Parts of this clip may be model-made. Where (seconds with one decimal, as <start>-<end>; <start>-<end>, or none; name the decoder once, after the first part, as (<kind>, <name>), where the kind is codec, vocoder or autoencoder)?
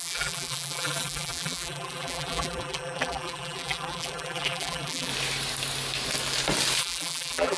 0.0-5.1 (vocoder, BigVGAN v2); 6.8-7.6